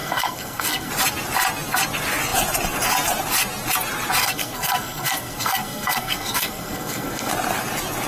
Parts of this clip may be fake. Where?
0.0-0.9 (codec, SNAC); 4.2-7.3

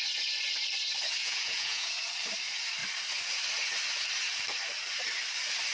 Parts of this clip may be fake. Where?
1.2-1.9 (vocoder, Vocos)